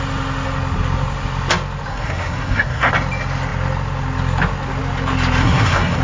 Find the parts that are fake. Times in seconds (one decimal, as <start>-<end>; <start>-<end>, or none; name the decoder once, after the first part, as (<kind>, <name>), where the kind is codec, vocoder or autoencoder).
1.9-2.9 (codec, SNAC); 5.4-6.0